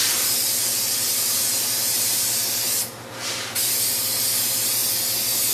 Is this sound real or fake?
real